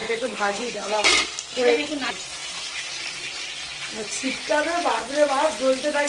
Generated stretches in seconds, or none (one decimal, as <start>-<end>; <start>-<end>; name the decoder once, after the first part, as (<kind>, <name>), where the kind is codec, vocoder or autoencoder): 0.0-1.9 (codec, SNAC)